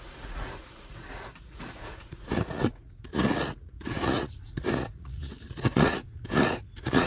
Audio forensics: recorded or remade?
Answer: remade